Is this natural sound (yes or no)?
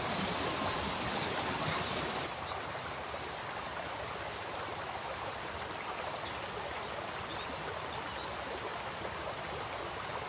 yes